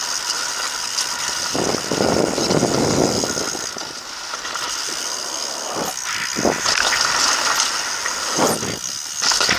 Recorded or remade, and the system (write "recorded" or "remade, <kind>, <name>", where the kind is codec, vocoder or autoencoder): recorded